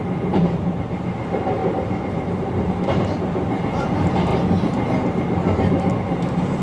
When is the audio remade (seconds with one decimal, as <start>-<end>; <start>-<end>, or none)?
0.0-4.3; 6.0-6.6

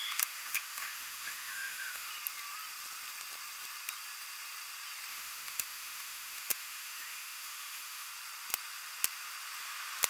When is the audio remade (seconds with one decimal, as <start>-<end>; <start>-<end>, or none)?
0.0-2.1; 5.1-8.1

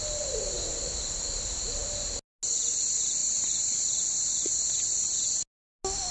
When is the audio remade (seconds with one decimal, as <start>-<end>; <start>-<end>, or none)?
none

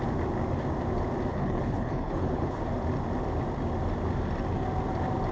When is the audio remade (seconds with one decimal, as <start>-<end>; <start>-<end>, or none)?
1.3-2.6